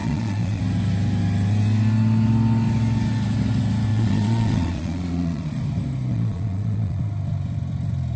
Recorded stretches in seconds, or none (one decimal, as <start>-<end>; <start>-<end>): 0.6-3.9; 5.6-6.1; 7.0-8.2